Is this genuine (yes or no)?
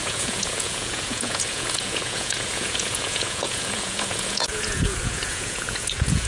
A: no